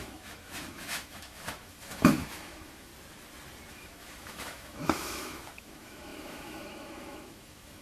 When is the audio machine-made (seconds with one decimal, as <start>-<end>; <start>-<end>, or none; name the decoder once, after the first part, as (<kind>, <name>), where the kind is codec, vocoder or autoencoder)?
0.0-2.9 (autoencoder, DAC-VAE); 3.7-7.8